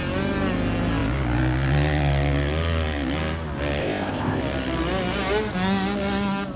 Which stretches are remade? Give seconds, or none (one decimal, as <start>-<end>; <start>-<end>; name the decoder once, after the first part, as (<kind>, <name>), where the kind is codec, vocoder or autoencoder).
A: 3.8-4.4 (codec, ZipCodec)